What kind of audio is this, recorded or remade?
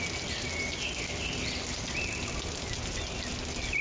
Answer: recorded